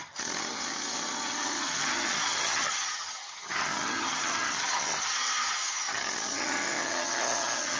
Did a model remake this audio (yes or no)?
yes